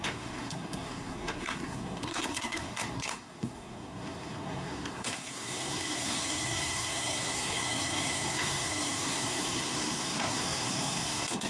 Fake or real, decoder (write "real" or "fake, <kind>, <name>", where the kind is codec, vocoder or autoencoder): fake, codec, SNAC